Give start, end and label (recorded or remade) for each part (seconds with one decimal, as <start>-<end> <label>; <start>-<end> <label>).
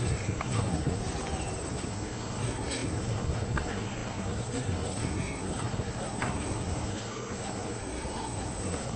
0.0-1.0 remade; 1.0-1.7 recorded; 1.7-9.0 remade